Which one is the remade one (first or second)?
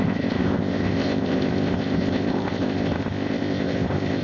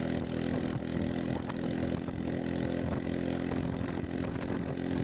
first